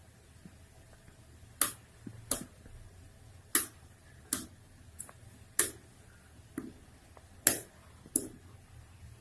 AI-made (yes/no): no